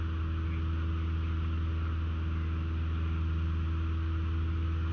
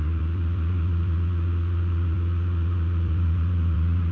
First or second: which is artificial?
second